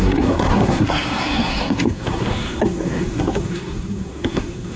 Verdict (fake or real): fake